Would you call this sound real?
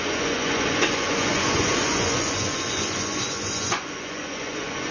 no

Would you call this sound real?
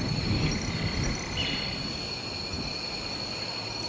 yes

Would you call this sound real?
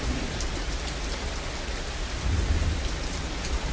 yes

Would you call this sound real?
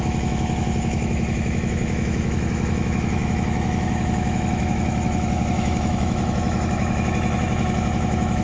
no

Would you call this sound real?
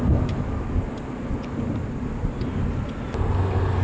yes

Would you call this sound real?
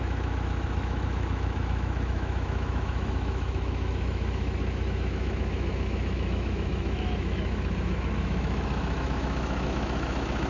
no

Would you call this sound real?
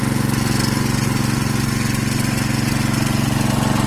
yes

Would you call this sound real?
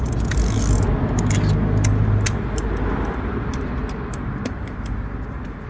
yes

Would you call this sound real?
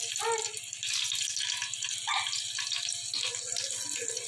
yes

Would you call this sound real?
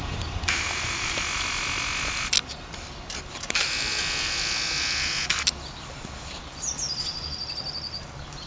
yes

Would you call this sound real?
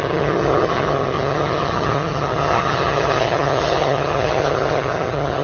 no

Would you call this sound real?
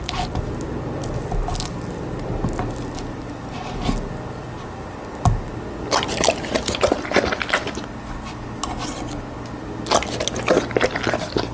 yes